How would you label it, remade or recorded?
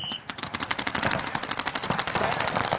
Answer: remade